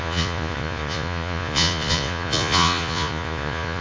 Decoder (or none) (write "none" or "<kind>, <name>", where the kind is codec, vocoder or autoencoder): vocoder, Vocos